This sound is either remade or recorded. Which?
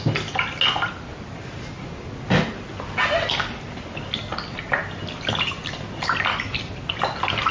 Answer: recorded